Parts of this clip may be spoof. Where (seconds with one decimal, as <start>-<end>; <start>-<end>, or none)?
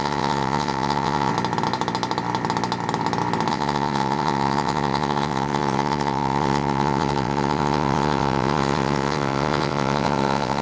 0.0-1.3; 3.5-10.6